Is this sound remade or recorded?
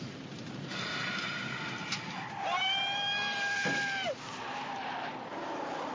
remade